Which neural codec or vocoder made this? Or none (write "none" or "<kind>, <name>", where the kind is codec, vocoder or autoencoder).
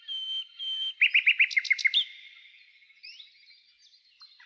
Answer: none